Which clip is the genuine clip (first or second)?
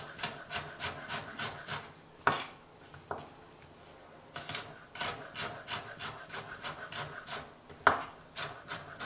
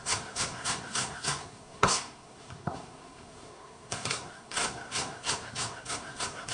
first